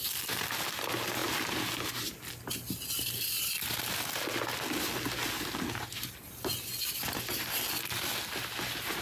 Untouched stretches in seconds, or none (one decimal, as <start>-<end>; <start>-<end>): 0.0-9.0